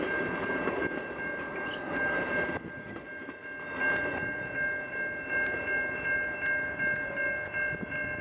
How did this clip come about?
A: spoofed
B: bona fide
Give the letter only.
B